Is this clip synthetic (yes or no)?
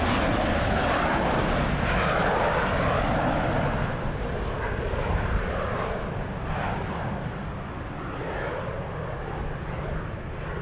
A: no